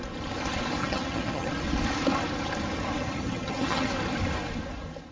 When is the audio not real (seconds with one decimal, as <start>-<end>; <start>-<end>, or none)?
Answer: 0.8-1.5; 3.0-3.9